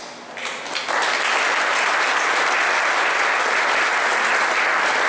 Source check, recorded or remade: recorded